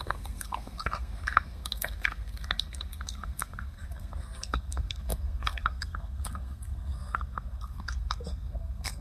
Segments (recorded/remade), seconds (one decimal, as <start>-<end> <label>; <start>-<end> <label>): 0.0-9.0 remade